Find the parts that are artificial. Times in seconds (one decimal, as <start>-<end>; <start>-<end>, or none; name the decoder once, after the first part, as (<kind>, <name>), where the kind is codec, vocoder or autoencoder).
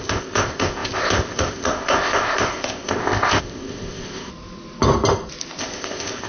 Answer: 0.0-4.3 (codec, ZipCodec); 5.6-6.3